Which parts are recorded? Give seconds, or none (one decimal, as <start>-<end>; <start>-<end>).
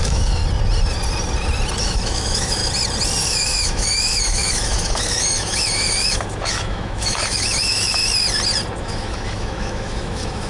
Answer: 0.4-1.8; 2.6-3.2; 8.0-8.8